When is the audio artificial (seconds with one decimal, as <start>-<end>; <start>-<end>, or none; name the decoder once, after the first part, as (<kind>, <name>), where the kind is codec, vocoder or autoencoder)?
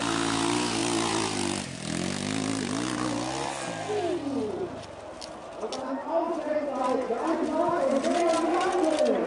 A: 0.8-1.6 (vocoder, BigVGAN v2); 7.5-8.6